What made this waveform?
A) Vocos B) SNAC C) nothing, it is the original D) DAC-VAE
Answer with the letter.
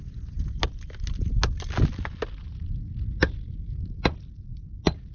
C